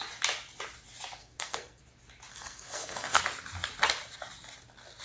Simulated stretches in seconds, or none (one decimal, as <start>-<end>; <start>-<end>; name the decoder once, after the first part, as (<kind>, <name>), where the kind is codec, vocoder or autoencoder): 1.2-1.8 (codec, SNAC); 2.3-3.2